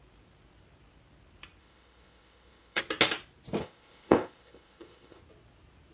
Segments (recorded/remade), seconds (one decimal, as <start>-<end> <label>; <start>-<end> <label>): 0.0-1.6 recorded; 1.6-2.8 remade; 2.8-3.6 recorded; 3.6-5.2 remade; 5.2-5.9 recorded